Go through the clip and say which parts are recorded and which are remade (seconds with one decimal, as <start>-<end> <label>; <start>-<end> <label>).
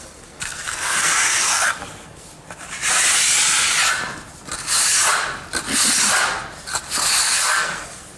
0.0-2.3 remade; 2.3-7.2 recorded; 7.2-8.2 remade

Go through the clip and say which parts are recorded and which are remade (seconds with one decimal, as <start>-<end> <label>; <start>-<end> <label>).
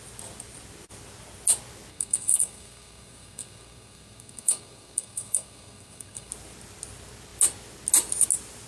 0.0-1.9 recorded; 1.9-6.3 remade; 6.3-8.7 recorded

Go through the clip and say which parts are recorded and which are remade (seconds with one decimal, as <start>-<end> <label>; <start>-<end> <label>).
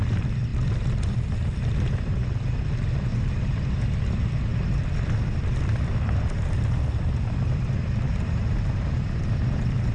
0.0-9.9 recorded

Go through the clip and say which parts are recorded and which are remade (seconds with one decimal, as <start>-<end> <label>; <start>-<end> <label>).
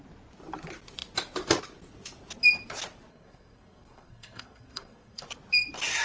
0.0-3.1 recorded; 3.1-5.2 remade; 5.2-6.0 recorded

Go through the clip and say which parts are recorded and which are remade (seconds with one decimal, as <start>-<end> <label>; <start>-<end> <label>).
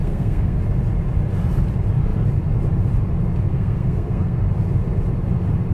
0.0-0.6 remade; 0.6-3.5 recorded; 3.5-4.4 remade; 4.4-5.7 recorded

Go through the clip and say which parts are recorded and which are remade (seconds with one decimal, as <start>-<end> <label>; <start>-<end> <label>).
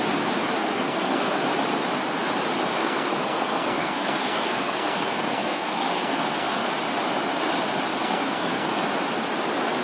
0.0-0.6 recorded; 0.6-1.4 remade; 1.4-2.8 recorded; 2.8-6.7 remade; 6.7-7.9 recorded; 7.9-8.7 remade; 8.7-9.8 recorded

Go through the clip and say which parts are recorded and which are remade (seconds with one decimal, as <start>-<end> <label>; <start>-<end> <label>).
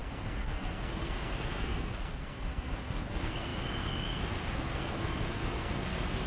0.0-6.3 remade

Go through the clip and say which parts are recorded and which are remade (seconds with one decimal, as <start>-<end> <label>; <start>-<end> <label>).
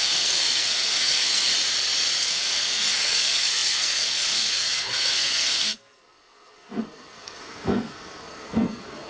0.0-1.5 remade; 1.5-2.2 recorded; 2.2-9.1 remade